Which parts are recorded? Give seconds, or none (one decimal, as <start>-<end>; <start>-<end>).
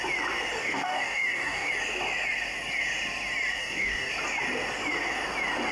0.0-0.6; 1.7-3.6; 4.1-5.7